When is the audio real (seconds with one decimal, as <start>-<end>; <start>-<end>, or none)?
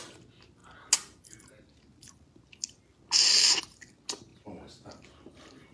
0.0-5.7